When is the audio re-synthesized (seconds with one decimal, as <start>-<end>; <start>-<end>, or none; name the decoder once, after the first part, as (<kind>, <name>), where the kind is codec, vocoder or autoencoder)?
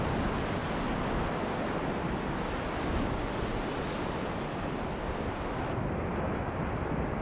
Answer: none